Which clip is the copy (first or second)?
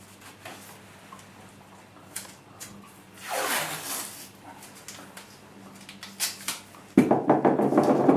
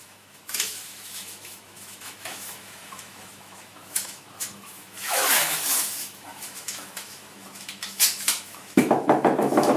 second